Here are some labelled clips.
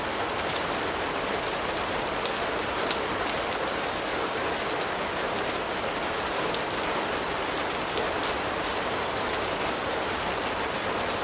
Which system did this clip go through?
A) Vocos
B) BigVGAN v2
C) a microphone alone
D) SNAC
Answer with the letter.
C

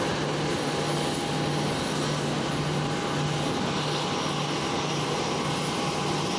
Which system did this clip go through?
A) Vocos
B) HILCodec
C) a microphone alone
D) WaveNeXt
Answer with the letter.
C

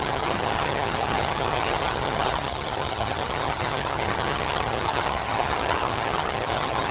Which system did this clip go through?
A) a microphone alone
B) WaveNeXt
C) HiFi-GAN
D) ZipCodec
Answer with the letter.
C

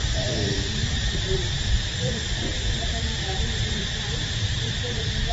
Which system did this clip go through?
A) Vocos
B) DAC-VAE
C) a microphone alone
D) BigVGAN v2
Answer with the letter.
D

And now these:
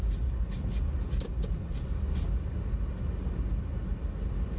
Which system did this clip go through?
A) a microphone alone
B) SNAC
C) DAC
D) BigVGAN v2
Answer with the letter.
A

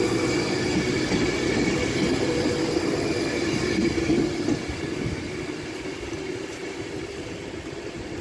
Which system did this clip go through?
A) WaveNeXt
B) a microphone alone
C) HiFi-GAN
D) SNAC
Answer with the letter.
B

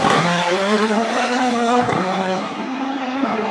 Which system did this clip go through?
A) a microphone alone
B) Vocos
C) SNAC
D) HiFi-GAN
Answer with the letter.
C